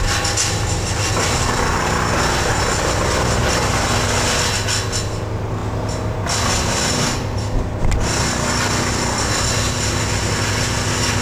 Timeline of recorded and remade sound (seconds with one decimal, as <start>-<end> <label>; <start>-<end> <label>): 0.0-11.2 recorded